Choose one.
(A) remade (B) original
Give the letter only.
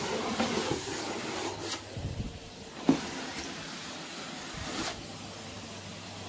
B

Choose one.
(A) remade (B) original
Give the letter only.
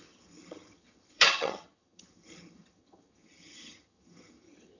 A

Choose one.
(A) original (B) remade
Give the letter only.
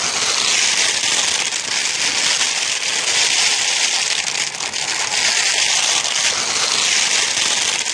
A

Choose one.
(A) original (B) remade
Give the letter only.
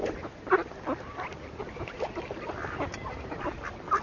A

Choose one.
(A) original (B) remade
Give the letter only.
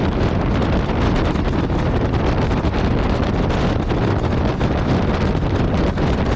A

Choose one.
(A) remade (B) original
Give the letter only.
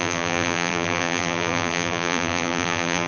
A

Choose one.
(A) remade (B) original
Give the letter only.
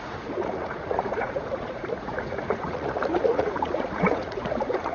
A